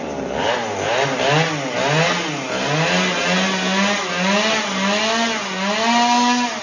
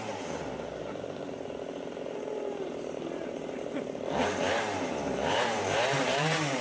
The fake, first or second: second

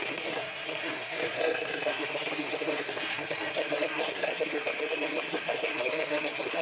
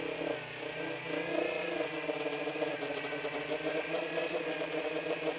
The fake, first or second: first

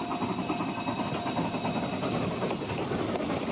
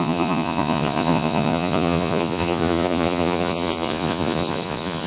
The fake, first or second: second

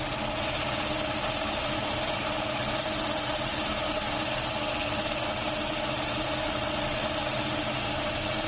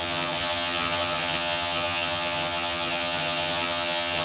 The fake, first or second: second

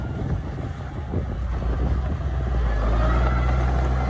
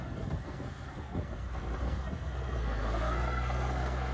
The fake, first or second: second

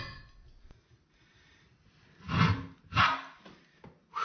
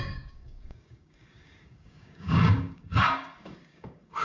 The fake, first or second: second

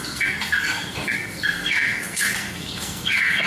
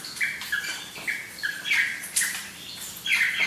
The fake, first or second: first